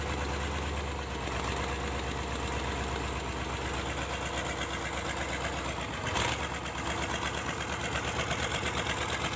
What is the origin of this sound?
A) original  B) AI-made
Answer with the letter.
A